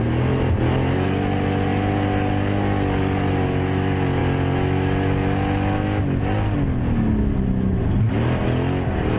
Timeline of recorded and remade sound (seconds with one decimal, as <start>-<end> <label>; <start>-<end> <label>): 0.0-9.2 recorded